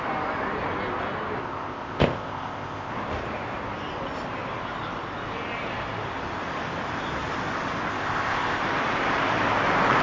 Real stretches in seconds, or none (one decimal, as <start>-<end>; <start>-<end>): 0.0-1.4; 2.9-7.9; 8.6-10.0